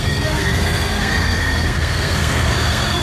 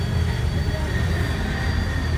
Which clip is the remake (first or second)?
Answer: first